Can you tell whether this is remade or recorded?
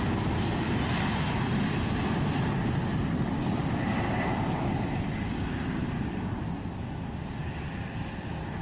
recorded